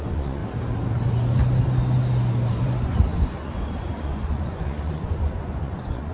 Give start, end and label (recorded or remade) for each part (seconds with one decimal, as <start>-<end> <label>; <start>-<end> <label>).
0.0-0.4 remade; 0.4-2.6 recorded; 2.6-6.1 remade